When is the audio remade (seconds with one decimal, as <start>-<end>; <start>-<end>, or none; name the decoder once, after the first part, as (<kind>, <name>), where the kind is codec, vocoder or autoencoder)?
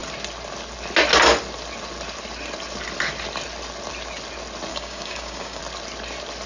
4.7-5.6 (codec, DAC)